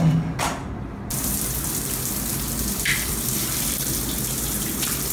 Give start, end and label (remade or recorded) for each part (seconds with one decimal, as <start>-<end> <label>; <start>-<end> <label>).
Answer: 0.0-0.6 recorded; 0.6-3.7 remade; 3.7-5.1 recorded